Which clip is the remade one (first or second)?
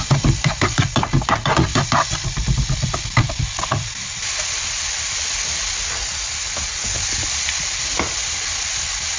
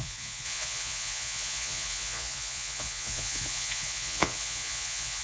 second